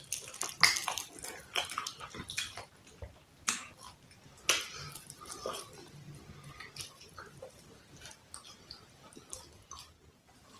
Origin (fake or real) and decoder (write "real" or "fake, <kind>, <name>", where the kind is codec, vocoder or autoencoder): real